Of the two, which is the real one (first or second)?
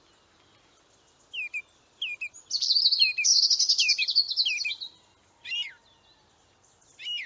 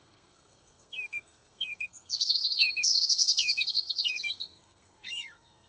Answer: first